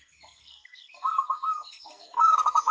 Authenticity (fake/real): fake